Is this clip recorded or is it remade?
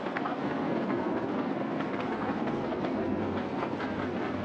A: remade